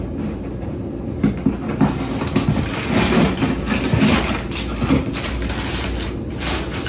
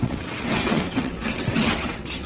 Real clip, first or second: first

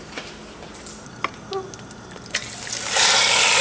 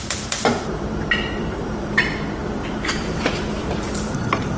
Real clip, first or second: first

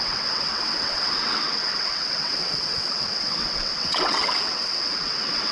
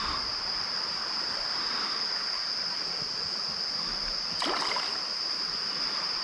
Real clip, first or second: second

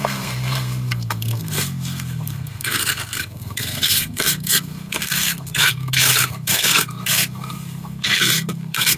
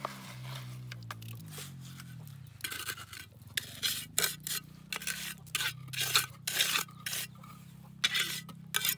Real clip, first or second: second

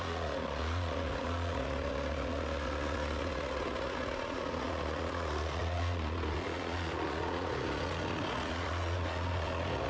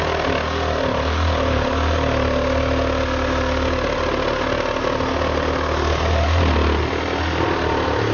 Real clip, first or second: second